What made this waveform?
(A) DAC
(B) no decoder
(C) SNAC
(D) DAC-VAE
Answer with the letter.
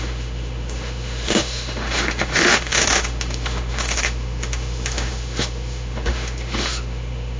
D